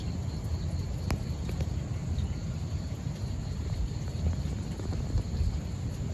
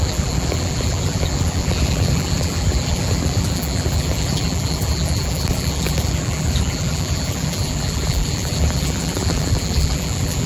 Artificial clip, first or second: second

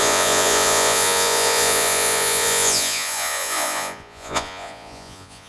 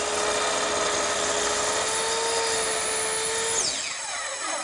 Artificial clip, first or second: first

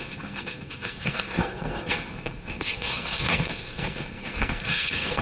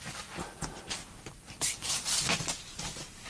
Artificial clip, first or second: first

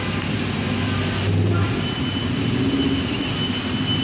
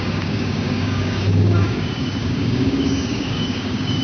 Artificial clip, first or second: second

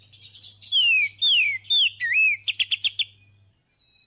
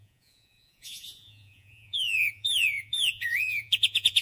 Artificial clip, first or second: second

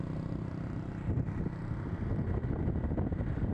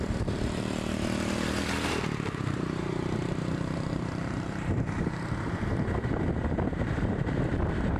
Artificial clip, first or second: second